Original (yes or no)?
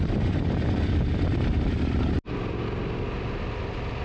yes